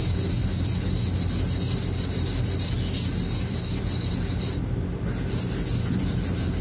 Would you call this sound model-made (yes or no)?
no